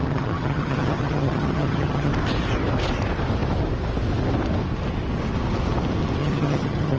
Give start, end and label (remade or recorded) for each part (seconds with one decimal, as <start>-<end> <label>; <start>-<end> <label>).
0.0-2.1 remade; 2.1-6.2 recorded; 6.2-7.0 remade